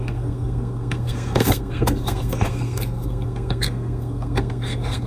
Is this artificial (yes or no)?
yes